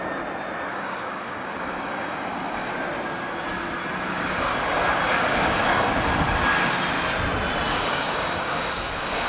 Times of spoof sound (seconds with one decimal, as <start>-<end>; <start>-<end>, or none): 0.7-2.7; 5.1-5.9; 7.7-9.3